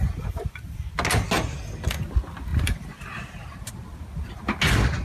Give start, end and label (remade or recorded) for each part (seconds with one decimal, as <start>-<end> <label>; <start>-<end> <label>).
0.0-2.5 recorded; 2.5-3.7 remade; 3.7-5.0 recorded